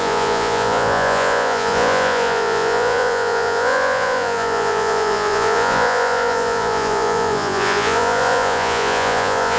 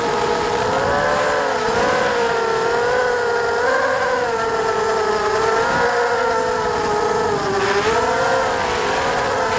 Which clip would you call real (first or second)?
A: second